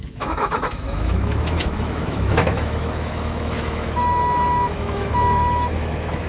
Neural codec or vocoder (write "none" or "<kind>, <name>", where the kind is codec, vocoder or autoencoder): autoencoder, DAC-VAE